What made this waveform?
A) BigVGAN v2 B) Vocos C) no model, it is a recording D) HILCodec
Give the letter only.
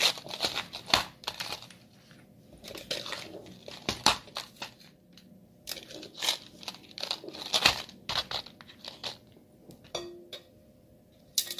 C